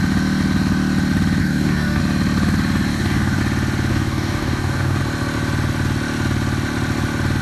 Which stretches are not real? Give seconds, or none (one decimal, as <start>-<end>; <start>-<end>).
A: 1.4-2.0; 2.9-3.4; 3.9-5.0